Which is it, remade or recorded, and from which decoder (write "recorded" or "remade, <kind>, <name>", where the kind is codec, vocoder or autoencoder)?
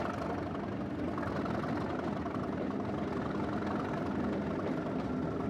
recorded